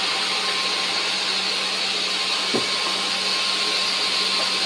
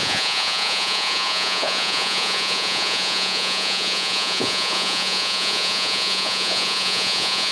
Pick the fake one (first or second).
second